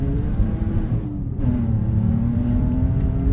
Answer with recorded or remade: remade